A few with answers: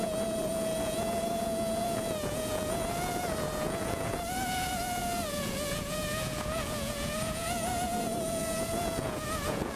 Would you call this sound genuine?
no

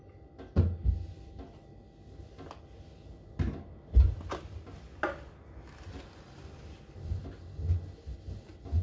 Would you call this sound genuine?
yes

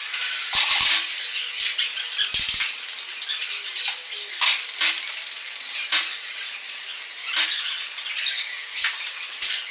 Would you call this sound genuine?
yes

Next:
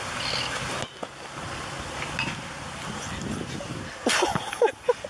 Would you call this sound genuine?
yes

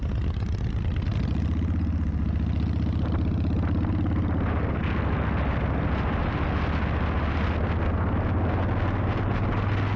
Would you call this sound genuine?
yes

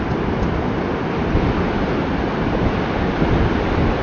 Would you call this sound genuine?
yes